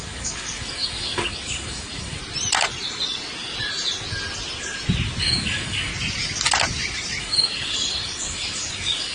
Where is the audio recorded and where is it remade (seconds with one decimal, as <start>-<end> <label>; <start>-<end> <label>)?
0.0-2.2 remade; 2.2-5.2 recorded; 5.2-5.9 remade; 5.9-7.2 recorded; 7.2-9.1 remade